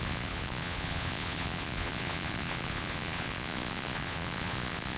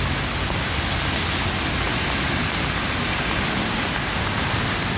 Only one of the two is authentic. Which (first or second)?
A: second